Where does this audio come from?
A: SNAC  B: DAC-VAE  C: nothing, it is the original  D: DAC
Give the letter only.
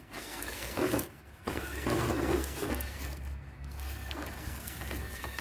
A